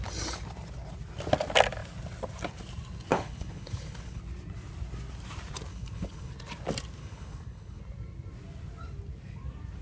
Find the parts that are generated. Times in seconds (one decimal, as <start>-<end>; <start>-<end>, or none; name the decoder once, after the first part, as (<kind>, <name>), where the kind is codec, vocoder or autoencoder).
3.1-4.2 (codec, HILCodec); 5.7-6.3; 7.0-7.8